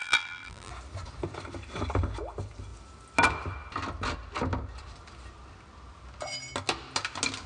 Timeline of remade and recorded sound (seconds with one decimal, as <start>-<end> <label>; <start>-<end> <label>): 0.0-0.7 remade; 0.7-7.5 recorded